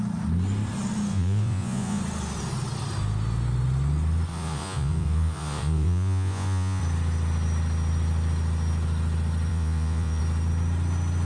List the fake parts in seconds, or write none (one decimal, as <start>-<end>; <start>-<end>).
1.1-2.0; 4.3-6.8; 9.5-10.2